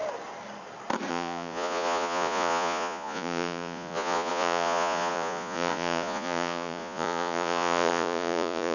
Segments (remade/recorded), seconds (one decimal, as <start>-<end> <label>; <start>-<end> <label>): 0.0-1.1 recorded; 1.1-8.7 remade